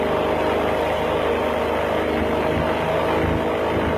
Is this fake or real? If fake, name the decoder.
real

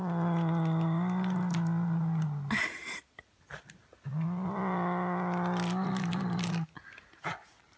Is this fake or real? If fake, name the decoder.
real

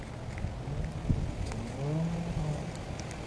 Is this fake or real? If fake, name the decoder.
real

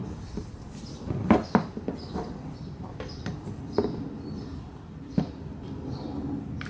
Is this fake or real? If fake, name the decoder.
fake, vocoder, BigVGAN v2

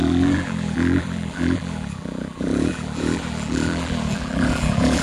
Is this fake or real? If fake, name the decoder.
fake, vocoder, BigVGAN v2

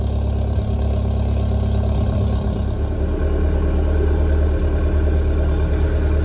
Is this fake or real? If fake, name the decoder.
real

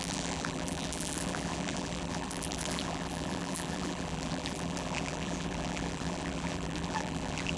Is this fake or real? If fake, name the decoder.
fake, vocoder, BigVGAN v2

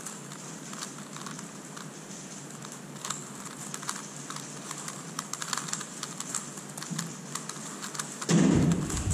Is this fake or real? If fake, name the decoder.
fake, vocoder, BigVGAN v2